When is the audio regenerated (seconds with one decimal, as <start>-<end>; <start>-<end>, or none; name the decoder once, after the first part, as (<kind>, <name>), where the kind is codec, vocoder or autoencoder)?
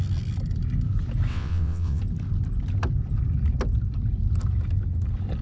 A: 1.3-2.0 (vocoder, WaveNeXt)